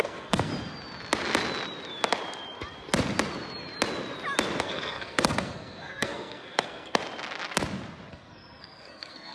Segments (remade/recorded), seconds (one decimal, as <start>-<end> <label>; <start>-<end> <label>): 0.0-0.5 remade; 0.5-4.6 recorded; 4.6-7.0 remade; 7.0-8.1 recorded; 8.1-9.3 remade